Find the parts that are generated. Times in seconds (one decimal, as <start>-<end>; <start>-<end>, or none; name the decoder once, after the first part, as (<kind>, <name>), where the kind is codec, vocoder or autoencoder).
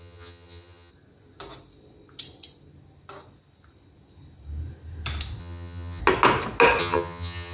0.0-0.9 (vocoder, HiFi-GAN); 5.4-6.0; 6.8-7.5